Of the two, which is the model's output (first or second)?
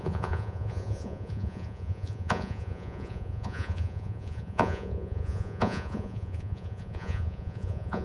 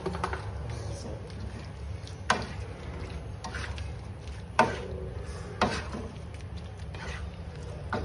first